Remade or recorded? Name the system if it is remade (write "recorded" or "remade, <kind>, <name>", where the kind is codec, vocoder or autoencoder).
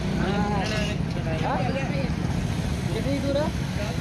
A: recorded